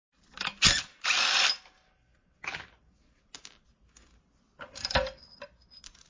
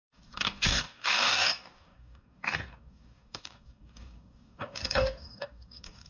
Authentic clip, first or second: first